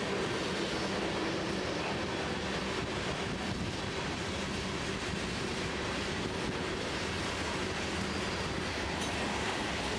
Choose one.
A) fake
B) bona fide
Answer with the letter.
B